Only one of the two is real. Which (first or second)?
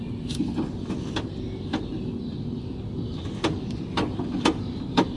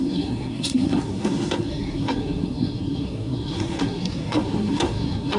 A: first